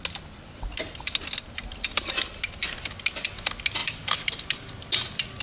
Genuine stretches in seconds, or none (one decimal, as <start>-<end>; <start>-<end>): 0.0-3.8; 4.7-5.4